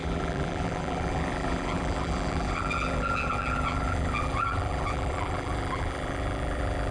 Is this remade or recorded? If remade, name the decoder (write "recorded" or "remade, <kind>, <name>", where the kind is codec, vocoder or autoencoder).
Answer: remade, vocoder, BigVGAN v2